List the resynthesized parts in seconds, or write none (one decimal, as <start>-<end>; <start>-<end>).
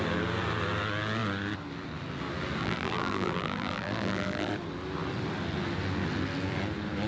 2.6-4.5